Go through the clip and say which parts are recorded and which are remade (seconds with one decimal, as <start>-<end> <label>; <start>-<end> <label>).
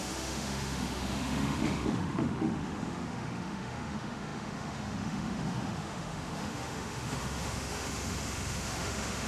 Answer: 0.0-9.3 remade